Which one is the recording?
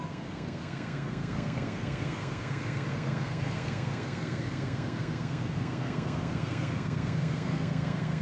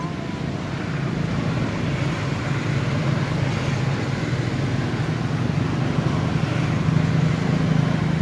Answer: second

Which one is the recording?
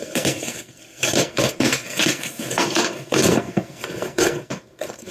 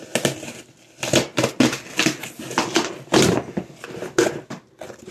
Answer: second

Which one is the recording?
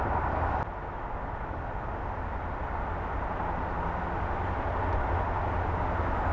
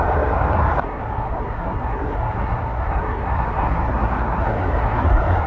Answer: first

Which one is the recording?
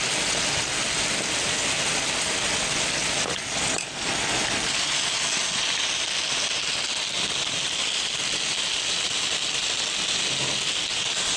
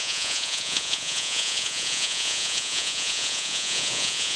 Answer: first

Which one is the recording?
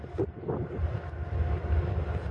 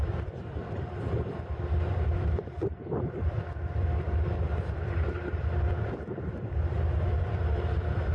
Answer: first